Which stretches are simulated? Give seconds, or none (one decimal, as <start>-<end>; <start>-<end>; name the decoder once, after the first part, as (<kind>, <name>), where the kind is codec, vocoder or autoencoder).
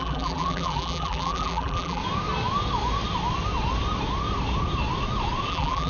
0.0-2.0 (vocoder, BigVGAN v2); 5.5-5.9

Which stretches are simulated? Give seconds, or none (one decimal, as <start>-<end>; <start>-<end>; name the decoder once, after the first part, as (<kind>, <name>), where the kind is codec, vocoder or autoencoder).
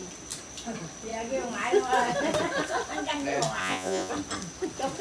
3.6-4.1 (vocoder, Vocos)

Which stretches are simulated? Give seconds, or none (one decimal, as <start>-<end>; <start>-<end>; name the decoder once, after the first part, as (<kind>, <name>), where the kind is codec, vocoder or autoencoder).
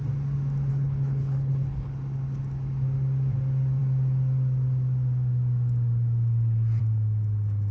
0.7-1.9 (codec, HILCodec)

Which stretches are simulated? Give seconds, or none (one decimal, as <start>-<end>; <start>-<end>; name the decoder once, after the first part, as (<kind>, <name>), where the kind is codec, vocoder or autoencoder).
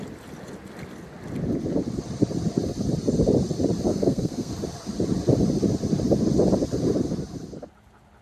3.9-4.5 (codec, SNAC)